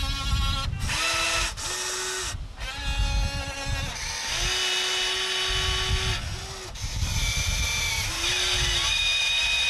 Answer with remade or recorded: recorded